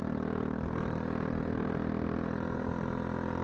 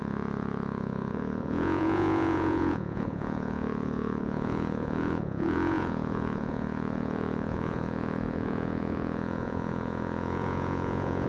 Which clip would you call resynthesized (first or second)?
second